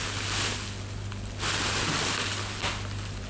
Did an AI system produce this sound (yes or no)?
no